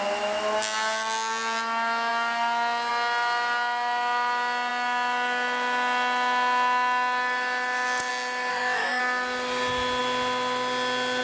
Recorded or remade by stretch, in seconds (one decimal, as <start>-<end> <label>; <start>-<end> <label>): 0.0-8.5 recorded; 8.5-9.0 remade; 9.0-11.2 recorded